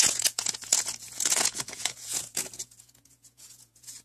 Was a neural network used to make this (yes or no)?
yes